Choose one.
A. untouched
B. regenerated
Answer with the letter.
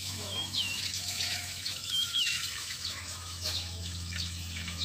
B